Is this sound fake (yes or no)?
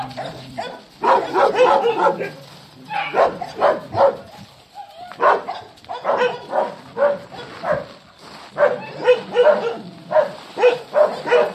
no